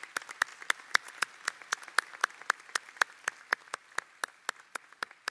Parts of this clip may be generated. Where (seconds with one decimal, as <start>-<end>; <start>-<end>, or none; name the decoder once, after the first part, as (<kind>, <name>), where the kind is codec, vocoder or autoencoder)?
none